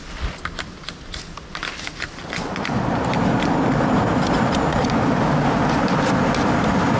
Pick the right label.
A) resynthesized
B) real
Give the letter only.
B